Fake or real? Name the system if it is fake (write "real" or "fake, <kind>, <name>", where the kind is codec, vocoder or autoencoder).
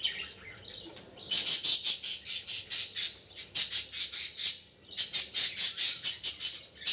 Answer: real